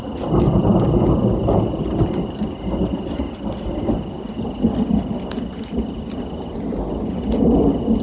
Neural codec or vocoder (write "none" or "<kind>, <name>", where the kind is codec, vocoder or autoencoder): none